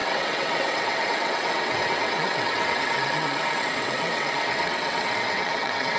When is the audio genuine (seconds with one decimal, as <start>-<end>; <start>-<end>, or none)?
none